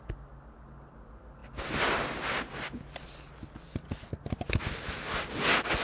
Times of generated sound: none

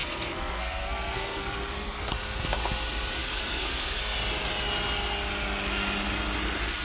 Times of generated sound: 0.0-2.1 (codec, SNAC); 3.2-4.0

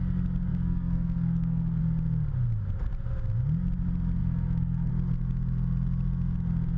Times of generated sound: 0.5-1.8 (codec, SNAC); 4.2-4.9

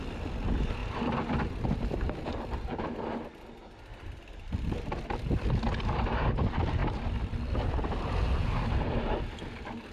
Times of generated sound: 0.8-2.4 (vocoder, BigVGAN v2); 3.9-5.4; 6.8-7.7